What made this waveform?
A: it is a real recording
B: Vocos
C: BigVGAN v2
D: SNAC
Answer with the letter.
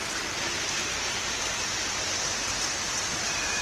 A